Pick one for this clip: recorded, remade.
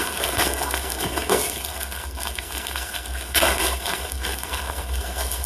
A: remade